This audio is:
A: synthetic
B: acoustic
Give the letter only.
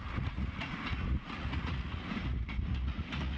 A